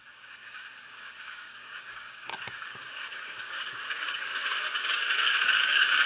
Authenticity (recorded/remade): remade